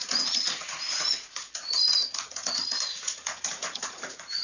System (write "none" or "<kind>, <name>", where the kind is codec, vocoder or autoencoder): vocoder, Vocos